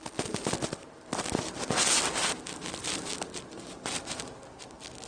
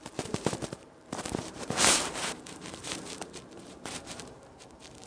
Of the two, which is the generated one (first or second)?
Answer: second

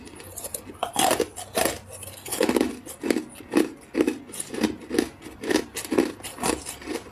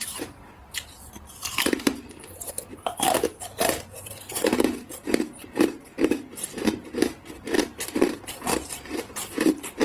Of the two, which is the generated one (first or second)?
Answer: second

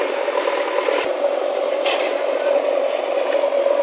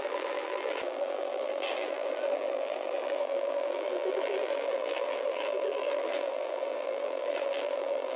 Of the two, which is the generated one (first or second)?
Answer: second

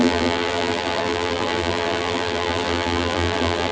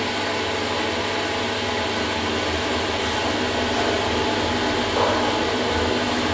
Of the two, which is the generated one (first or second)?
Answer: first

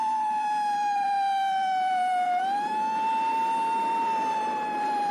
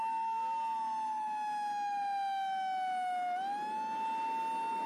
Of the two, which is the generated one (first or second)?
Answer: first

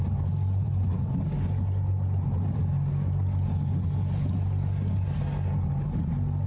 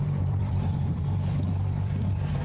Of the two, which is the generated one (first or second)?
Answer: second